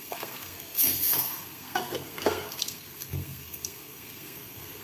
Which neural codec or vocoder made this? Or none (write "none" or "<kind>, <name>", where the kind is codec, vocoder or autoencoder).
codec, SNAC